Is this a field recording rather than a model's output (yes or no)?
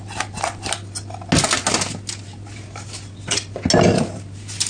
yes